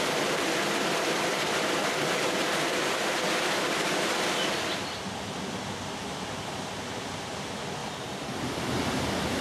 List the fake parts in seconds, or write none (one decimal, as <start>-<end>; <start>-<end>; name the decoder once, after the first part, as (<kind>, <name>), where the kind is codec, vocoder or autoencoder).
none